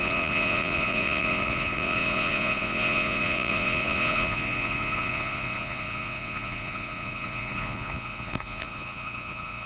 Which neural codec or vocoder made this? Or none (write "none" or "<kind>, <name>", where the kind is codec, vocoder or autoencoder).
vocoder, Vocos